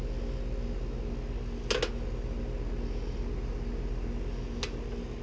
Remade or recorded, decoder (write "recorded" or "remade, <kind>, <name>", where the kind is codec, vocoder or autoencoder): recorded